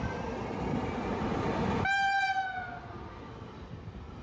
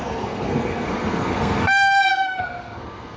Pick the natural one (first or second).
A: first